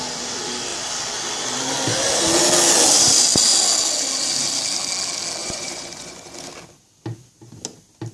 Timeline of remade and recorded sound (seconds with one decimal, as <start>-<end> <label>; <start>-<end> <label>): 0.0-5.4 recorded; 5.4-6.5 remade; 6.5-8.1 recorded